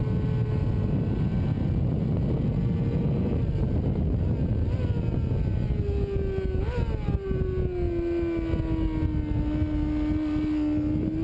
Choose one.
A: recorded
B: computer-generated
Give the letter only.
A